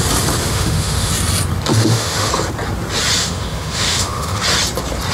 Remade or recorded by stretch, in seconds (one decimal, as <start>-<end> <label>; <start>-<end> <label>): 0.0-0.4 recorded; 0.4-1.1 remade; 1.1-1.7 recorded; 1.7-2.3 remade; 2.3-3.2 recorded; 3.2-4.4 remade; 4.4-5.1 recorded